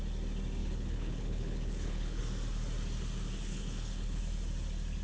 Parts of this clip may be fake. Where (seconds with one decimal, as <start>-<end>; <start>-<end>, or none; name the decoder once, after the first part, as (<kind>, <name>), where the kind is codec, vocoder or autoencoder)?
0.6-2.2 (codec, HILCodec); 3.5-4.2